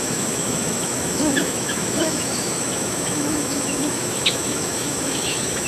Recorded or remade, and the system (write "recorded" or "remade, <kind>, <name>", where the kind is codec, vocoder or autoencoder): remade, autoencoder, DAC-VAE